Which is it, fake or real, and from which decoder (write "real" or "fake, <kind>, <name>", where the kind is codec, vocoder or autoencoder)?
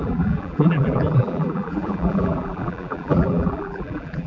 fake, vocoder, BigVGAN v2